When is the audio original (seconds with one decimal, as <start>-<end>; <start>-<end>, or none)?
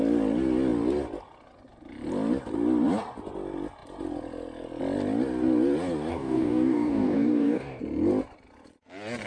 0.0-6.1; 7.8-9.3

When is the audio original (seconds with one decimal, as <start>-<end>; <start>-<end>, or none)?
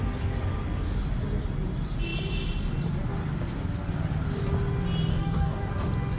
0.0-5.1; 5.7-6.2